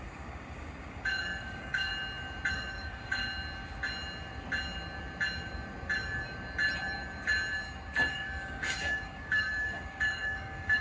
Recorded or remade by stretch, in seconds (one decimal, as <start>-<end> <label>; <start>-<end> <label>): 0.0-1.9 remade; 1.9-2.5 recorded; 2.5-3.2 remade; 3.2-8.1 recorded; 8.1-10.8 remade